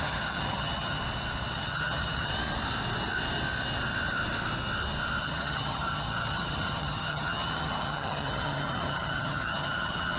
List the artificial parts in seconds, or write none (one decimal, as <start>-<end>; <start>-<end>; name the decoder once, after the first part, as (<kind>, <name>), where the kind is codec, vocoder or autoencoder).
0.0-1.0 (vocoder, HiFi-GAN); 1.5-2.3; 5.2-10.2